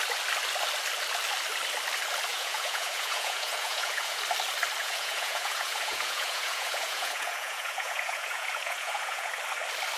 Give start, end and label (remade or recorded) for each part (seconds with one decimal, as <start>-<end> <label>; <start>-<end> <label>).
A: 0.0-2.3 recorded; 2.3-4.2 remade; 4.2-4.8 recorded; 4.8-9.3 remade; 9.3-10.0 recorded